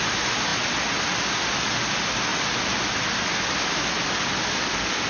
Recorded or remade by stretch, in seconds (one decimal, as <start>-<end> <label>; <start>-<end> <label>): 0.0-5.1 recorded